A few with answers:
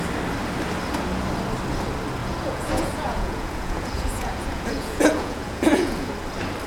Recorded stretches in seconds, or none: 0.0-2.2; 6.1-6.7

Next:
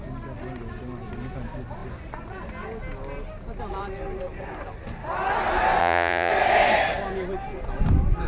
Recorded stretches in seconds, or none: 0.0-5.8; 6.3-8.3

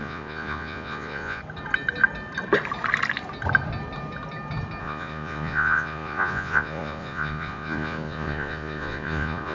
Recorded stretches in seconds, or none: 1.4-4.8

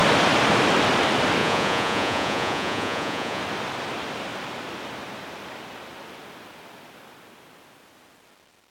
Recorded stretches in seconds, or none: 0.0-1.4; 3.4-8.7

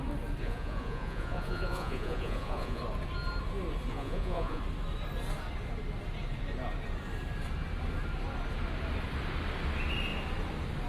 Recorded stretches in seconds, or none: 0.0-0.4; 2.8-3.9; 4.6-10.9

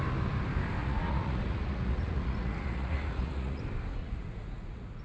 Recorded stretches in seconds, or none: 0.0-0.8; 3.6-4.0

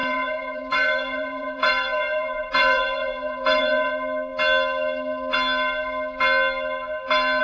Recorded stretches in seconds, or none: 3.9-7.4